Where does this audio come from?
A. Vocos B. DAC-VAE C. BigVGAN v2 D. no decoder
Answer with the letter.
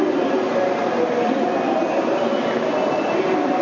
D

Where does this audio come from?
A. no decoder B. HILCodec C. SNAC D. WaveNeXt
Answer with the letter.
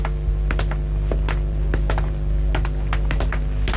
A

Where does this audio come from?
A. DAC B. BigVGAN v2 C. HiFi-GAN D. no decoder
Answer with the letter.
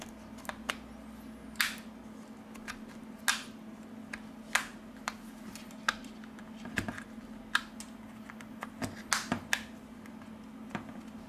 D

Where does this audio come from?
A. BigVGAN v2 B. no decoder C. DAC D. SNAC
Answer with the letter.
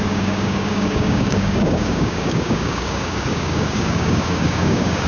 C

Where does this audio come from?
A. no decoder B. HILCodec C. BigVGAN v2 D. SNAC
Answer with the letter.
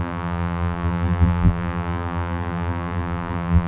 C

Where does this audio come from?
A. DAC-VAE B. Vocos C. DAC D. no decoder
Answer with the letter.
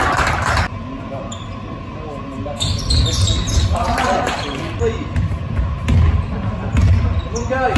D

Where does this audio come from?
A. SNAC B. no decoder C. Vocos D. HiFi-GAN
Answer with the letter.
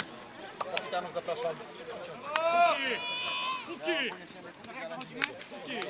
B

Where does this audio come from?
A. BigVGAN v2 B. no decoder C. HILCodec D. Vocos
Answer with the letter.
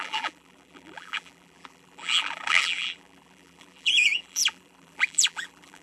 A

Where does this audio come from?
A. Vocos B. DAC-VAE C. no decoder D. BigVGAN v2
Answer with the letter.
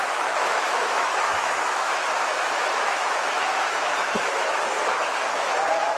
B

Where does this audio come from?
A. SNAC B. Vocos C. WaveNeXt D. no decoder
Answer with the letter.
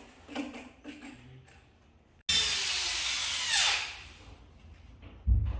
D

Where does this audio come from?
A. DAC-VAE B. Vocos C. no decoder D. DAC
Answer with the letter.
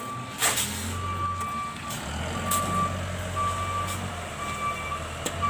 C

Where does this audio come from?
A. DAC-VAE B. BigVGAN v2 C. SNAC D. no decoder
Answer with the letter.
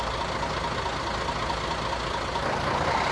D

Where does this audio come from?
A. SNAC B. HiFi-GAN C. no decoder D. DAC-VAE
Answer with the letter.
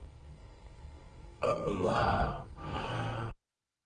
A